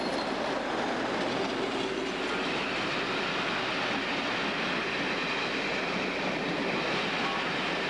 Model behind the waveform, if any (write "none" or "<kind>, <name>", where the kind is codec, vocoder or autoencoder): none